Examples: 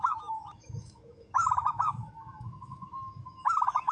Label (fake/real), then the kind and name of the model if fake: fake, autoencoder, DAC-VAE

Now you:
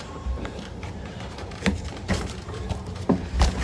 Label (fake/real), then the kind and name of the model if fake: fake, vocoder, BigVGAN v2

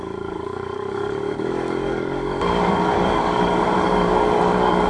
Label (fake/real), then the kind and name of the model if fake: fake, codec, DAC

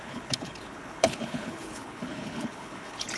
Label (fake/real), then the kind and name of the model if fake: fake, codec, HILCodec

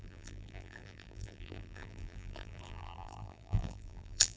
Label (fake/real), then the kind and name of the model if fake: fake, vocoder, BigVGAN v2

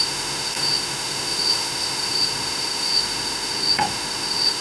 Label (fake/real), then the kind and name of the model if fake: fake, autoencoder, DAC-VAE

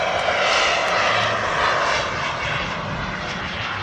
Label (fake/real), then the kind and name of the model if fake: real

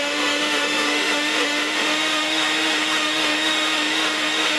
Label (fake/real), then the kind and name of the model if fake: fake, autoencoder, DAC-VAE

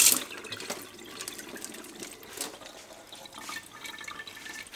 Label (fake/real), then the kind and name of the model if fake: real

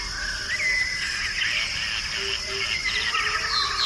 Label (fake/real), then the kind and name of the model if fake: real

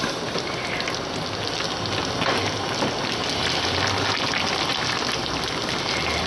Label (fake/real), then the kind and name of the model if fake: real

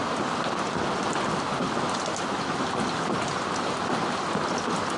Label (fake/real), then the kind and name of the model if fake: real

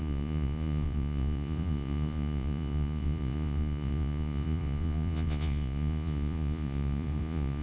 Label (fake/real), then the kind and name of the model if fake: fake, vocoder, Vocos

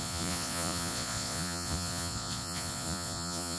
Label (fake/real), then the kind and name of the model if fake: fake, vocoder, Vocos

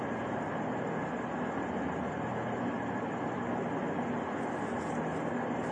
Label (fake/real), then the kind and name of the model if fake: real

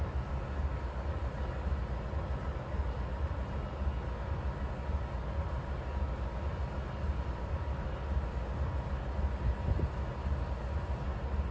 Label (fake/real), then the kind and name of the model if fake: real